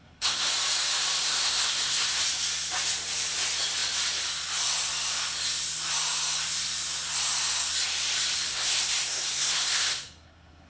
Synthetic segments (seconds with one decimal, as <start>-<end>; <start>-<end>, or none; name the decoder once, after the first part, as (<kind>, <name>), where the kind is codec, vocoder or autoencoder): 0.0-0.5 (codec, SNAC); 1.2-2.2; 8.5-10.7